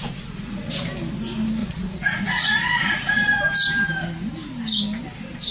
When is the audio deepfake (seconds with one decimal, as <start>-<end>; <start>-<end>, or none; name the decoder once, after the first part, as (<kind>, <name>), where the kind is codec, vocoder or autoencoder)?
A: 0.0-0.7 (vocoder, Vocos); 1.6-3.4